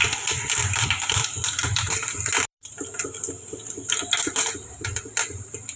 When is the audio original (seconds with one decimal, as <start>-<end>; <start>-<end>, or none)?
0.0-5.8